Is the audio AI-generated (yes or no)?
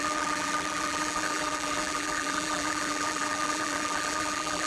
yes